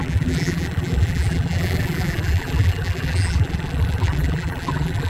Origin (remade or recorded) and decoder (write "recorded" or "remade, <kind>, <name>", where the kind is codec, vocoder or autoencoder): remade, vocoder, BigVGAN v2